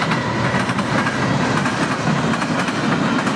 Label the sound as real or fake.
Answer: real